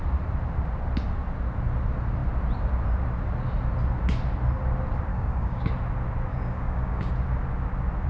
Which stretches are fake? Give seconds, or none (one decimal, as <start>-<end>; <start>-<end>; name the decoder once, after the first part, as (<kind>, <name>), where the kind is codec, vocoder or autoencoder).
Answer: 5.1-5.7 (codec, DAC); 6.3-7.1